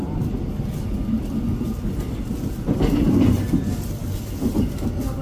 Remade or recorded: remade